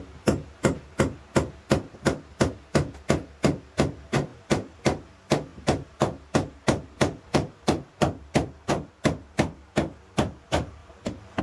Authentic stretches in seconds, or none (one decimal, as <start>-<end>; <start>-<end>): 0.0-4.3; 4.8-5.5; 8.9-10.8